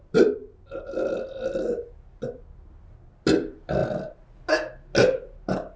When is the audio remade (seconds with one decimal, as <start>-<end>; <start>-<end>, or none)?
none

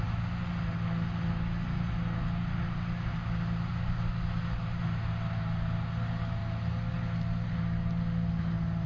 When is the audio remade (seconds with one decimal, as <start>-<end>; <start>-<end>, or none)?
none